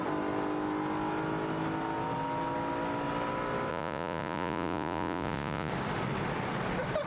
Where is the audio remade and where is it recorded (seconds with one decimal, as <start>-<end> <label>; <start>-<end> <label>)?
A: 0.0-3.7 recorded; 3.7-5.7 remade; 5.7-7.1 recorded